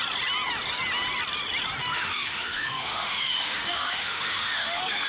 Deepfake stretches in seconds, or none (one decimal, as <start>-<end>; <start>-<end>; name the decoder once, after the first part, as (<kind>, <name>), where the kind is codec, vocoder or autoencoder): 1.8-5.1 (autoencoder, DAC-VAE)